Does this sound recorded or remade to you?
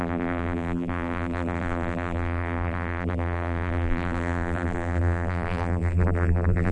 remade